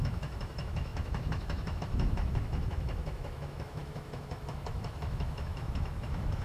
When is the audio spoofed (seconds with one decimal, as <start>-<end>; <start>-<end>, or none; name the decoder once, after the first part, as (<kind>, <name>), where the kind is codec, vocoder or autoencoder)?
0.0-6.4 (autoencoder, DAC-VAE)